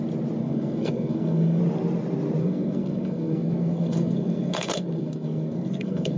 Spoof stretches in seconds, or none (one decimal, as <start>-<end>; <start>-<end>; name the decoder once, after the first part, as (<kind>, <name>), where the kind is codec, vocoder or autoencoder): 0.4-1.6 (codec, SNAC); 2.4-6.2